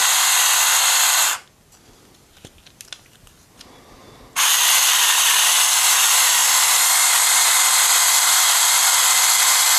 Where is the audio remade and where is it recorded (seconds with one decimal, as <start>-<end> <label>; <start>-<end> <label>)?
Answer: 0.0-9.8 recorded